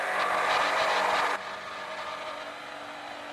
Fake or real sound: real